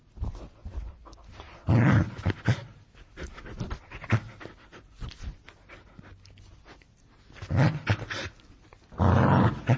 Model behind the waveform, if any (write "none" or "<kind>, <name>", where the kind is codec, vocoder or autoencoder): none